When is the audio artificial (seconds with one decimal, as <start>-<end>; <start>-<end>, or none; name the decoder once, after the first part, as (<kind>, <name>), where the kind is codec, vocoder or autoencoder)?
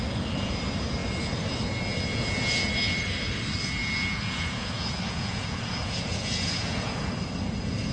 2.1-2.7 (vocoder, Vocos); 3.8-7.1